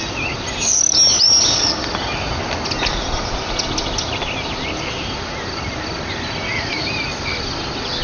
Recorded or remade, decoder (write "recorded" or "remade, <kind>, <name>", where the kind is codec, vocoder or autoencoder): recorded